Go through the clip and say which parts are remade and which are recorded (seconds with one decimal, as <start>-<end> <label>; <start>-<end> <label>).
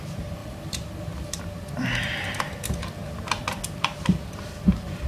0.0-0.4 recorded; 0.4-1.4 remade; 1.4-5.1 recorded